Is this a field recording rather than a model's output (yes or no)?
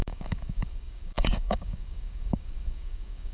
no